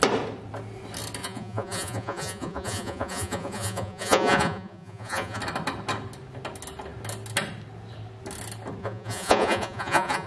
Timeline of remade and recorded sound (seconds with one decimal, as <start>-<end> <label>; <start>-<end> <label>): 0.0-1.2 recorded; 1.2-5.4 remade; 5.4-8.8 recorded; 8.8-10.3 remade